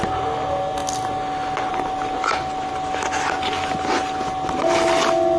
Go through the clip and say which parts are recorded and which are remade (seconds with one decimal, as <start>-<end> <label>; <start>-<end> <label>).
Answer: 0.0-5.4 recorded